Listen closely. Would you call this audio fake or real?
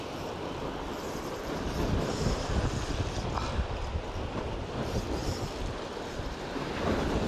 real